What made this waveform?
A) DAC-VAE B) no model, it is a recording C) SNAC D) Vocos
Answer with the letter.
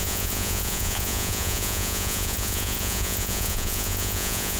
D